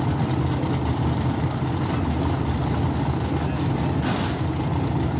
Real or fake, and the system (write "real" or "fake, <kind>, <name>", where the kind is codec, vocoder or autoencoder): real